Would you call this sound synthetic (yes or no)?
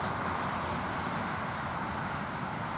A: yes